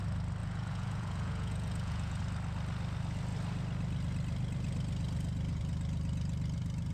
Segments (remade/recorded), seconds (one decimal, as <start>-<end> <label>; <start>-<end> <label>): 0.0-0.4 recorded; 0.4-2.2 remade; 2.2-6.9 recorded